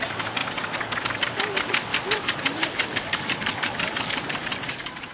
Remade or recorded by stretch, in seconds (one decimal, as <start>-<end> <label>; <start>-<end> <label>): 0.0-0.4 remade; 0.4-1.0 recorded; 1.0-5.1 remade

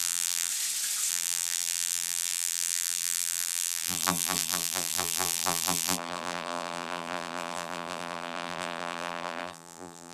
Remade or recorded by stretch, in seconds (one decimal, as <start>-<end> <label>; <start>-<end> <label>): 0.0-0.5 remade; 0.5-1.1 recorded; 1.1-10.1 remade

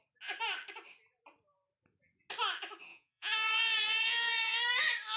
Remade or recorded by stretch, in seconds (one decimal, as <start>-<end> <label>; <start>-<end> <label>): 0.0-2.9 recorded; 2.9-4.6 remade; 4.6-5.2 recorded